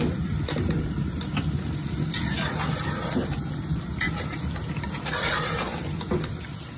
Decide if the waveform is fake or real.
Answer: real